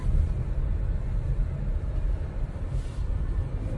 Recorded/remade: recorded